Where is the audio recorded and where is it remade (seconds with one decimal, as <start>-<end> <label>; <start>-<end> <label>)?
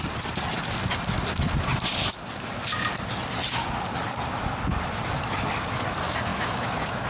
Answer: 0.0-6.3 recorded; 6.3-7.1 remade